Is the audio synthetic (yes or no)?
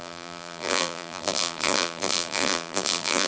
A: yes